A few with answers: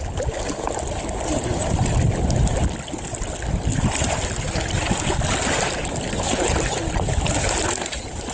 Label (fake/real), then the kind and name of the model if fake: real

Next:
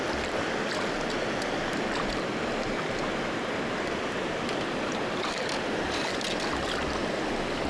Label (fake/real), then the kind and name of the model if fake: fake, vocoder, BigVGAN v2